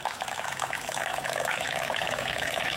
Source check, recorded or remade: remade